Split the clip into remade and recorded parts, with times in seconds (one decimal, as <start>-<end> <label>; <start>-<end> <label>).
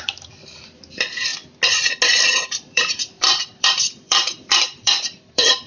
0.0-1.3 remade; 1.3-2.4 recorded; 2.4-5.7 remade